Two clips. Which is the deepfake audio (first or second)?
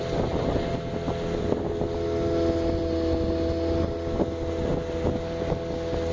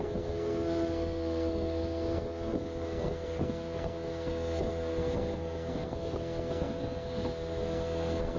second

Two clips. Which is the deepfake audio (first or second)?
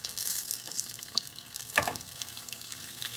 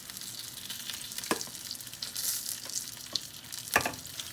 first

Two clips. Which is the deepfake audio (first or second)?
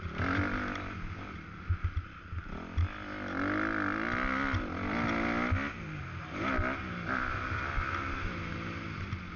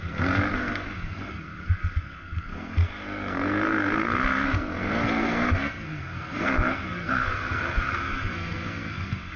second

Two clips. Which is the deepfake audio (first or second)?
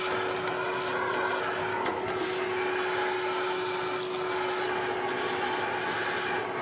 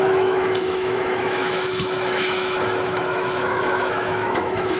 second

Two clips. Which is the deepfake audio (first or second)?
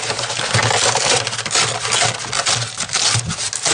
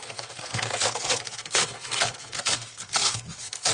second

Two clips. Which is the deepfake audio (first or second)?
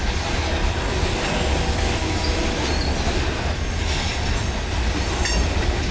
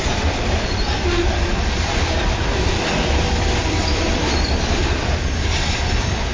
second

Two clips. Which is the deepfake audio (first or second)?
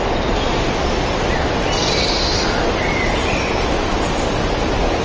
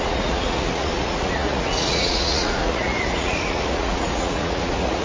second